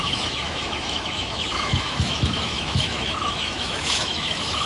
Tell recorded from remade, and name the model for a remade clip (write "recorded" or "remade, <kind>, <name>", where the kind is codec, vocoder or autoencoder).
remade, autoencoder, DAC-VAE